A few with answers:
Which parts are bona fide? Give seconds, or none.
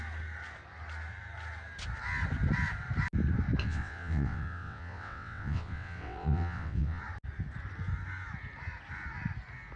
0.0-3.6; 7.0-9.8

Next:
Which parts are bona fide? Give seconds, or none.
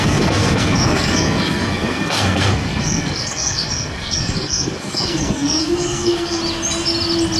6.4-7.4